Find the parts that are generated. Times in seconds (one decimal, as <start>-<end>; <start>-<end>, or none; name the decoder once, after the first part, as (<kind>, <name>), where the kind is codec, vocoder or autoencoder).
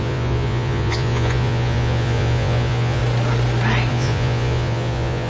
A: 0.0-3.0 (vocoder, Vocos); 3.9-5.3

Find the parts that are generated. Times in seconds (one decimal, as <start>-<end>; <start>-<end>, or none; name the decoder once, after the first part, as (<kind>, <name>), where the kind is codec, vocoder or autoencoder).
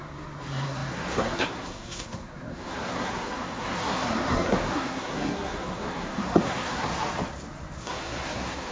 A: 0.0-6.9 (codec, SNAC); 7.8-8.7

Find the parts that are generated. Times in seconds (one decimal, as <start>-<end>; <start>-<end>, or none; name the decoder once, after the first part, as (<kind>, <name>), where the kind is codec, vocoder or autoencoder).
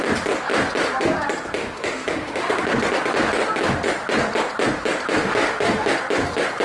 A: 1.6-2.6 (autoencoder, DAC-VAE); 5.2-5.9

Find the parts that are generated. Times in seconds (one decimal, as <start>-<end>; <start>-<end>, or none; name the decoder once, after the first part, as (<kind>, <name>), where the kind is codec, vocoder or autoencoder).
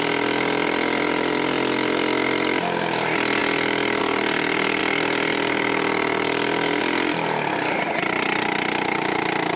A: none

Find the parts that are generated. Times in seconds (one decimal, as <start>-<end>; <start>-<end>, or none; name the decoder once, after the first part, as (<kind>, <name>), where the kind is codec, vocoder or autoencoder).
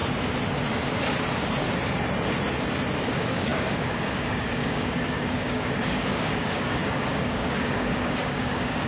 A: 3.1-8.9 (codec, DAC)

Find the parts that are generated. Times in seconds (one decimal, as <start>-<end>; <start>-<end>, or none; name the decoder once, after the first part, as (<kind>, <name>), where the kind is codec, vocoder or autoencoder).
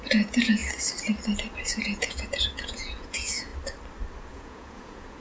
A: 0.0-0.6 (vocoder, Vocos); 1.7-3.5; 4.3-5.2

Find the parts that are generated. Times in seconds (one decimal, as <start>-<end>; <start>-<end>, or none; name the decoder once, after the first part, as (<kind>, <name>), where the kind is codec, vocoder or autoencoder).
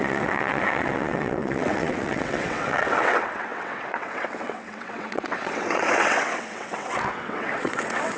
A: 0.0-8.2 (vocoder, WaveNeXt)